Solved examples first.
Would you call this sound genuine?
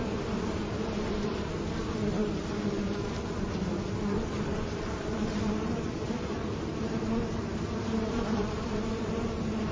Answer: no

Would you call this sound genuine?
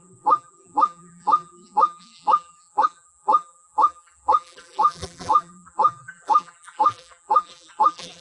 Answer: no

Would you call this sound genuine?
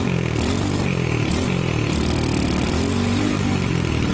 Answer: no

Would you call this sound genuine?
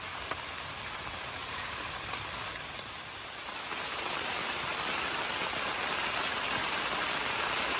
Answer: yes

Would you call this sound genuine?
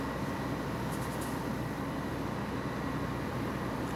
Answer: yes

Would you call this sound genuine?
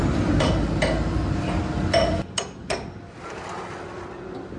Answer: yes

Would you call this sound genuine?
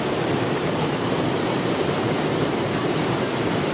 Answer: no